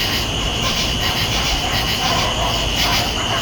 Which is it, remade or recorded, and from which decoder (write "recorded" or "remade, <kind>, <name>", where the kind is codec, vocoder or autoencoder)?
recorded